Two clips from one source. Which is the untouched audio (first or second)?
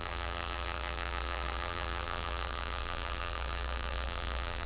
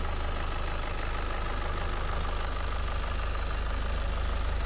second